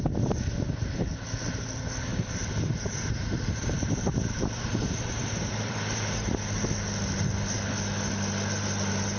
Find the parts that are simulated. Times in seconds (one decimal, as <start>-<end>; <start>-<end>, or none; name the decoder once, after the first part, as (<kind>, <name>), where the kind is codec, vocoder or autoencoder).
2.1-6.6 (vocoder, BigVGAN v2)